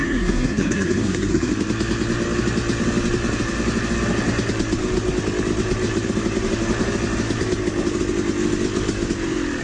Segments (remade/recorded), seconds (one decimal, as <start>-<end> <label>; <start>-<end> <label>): 0.0-1.5 remade; 1.5-9.6 recorded